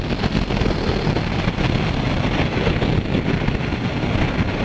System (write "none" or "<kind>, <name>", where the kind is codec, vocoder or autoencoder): none